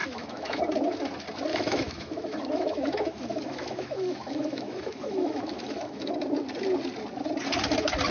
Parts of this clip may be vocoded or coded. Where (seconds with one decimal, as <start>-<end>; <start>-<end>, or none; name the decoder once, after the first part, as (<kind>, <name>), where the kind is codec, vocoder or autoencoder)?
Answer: 0.0-0.6 (autoencoder, DAC-VAE); 1.5-6.1